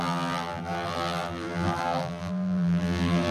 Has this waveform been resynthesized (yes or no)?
yes